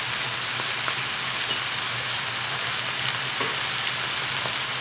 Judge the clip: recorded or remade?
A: recorded